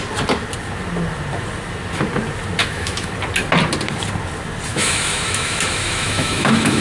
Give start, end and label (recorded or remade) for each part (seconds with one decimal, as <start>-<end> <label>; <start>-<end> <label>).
0.0-2.6 recorded; 2.6-3.1 remade; 3.1-4.7 recorded; 4.7-6.8 remade